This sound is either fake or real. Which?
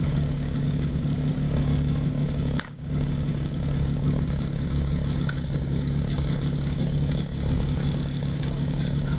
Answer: fake